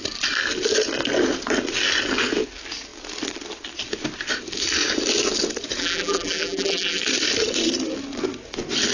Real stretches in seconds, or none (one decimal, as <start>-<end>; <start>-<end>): 0.0-5.8; 7.0-8.9